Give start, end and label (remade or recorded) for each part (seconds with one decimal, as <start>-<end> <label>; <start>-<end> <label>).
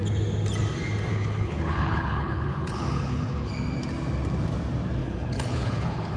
0.0-1.1 recorded; 1.1-3.5 remade; 3.5-5.0 recorded; 5.0-6.2 remade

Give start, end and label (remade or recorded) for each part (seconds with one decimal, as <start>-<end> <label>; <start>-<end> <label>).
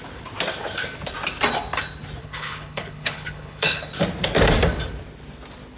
0.0-2.2 recorded; 2.2-3.9 remade; 3.9-5.8 recorded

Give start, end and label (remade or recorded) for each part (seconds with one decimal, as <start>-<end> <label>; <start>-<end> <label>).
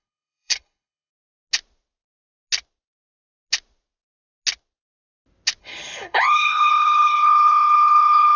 0.0-1.1 remade; 1.1-5.6 recorded; 5.6-8.4 remade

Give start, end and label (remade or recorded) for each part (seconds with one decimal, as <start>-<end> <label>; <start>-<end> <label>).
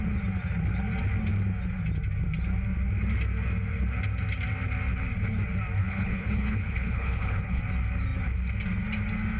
0.0-5.8 recorded; 5.8-7.6 remade; 7.6-9.4 recorded